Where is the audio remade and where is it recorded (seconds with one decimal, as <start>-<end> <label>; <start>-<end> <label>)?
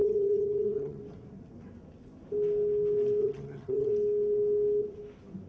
0.0-1.0 remade; 1.0-3.2 recorded; 3.2-3.9 remade; 3.9-5.5 recorded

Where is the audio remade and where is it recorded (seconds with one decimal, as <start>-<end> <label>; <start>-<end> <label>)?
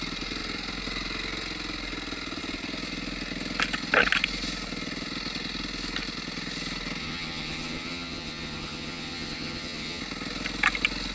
0.0-7.0 recorded; 7.0-10.0 remade; 10.0-11.1 recorded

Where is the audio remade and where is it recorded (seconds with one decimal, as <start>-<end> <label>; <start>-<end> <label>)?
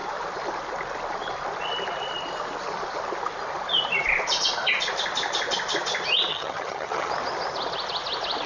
0.0-6.3 recorded; 6.3-7.1 remade; 7.1-8.5 recorded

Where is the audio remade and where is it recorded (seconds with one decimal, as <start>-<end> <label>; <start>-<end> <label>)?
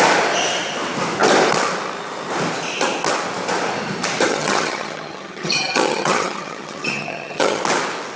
0.0-4.3 recorded; 4.3-7.6 remade; 7.6-8.2 recorded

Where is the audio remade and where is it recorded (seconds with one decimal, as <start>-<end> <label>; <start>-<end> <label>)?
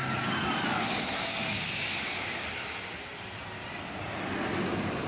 0.0-5.1 recorded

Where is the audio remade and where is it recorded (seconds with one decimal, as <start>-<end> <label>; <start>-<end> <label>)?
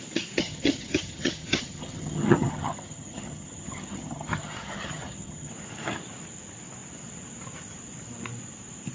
0.0-0.4 recorded; 0.4-5.5 remade; 5.5-8.9 recorded